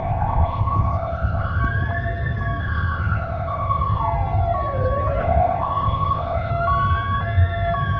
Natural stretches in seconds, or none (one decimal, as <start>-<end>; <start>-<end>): 1.6-2.6; 4.0-5.2; 6.5-8.0